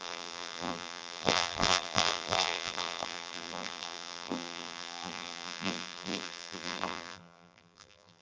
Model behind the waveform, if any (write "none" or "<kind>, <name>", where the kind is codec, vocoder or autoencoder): vocoder, BigVGAN v2